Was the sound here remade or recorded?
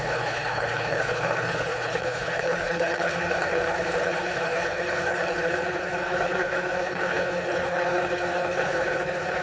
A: remade